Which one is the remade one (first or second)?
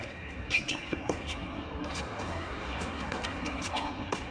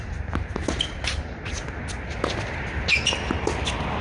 first